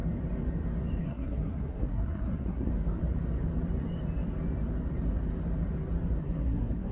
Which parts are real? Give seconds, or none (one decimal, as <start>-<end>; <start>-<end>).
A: 0.0-1.0; 2.7-6.2